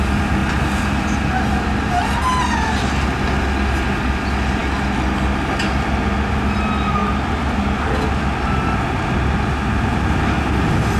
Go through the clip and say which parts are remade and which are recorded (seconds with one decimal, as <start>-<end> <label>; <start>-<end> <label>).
0.0-11.0 recorded